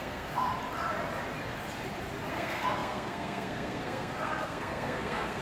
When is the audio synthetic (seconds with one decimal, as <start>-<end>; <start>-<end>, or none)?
0.0-0.5; 2.3-5.4